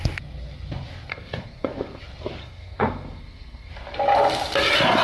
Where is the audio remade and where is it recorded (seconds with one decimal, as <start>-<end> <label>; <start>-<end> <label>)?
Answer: 0.0-1.1 recorded; 1.1-2.0 remade; 2.0-2.4 recorded; 2.4-3.7 remade; 3.7-5.0 recorded